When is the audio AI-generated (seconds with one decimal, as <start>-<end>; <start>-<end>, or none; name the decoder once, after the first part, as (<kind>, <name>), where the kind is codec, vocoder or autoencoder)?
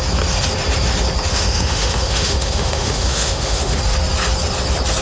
1.3-3.8 (autoencoder, DAC-VAE)